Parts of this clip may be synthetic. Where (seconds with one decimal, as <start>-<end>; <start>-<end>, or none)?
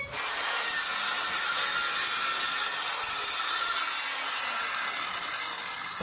none